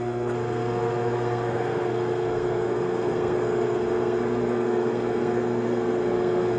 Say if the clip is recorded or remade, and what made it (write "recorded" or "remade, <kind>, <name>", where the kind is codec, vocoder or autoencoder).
remade, codec, SNAC